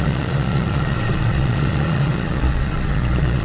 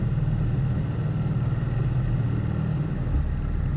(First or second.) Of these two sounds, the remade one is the first